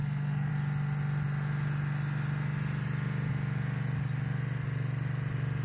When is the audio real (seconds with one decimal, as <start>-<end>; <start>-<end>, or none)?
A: 0.5-5.6

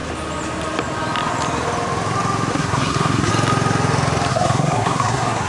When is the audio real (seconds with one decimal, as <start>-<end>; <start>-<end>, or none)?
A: 0.0-2.5; 3.3-4.3

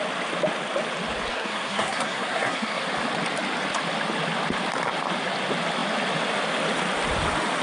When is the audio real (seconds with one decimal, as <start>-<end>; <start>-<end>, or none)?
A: 0.0-1.3; 2.8-7.6

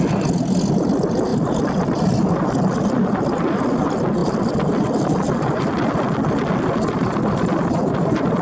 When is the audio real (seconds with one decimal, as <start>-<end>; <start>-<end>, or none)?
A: 0.0-8.4

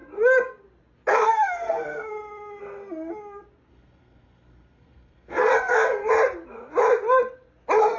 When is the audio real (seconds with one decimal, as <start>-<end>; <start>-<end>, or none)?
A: 0.0-1.1; 2.1-3.7; 6.1-8.0

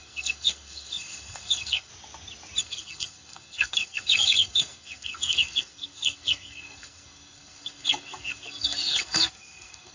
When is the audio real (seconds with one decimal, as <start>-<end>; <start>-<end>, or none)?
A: 1.9-2.6

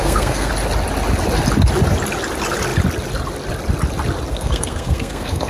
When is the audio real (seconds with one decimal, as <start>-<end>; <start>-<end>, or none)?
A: 0.5-4.3

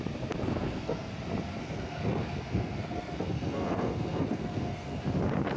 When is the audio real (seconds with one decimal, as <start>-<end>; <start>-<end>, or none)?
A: 0.0-0.4; 1.1-1.6; 5.0-5.6